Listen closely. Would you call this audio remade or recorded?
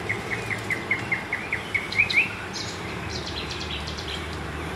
remade